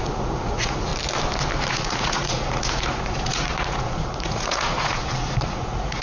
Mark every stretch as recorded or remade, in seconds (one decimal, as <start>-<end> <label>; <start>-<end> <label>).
0.0-0.9 remade; 0.9-1.7 recorded; 1.7-6.0 remade